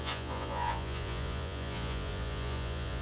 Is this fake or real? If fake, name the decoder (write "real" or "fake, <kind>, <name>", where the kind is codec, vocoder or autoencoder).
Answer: fake, vocoder, Vocos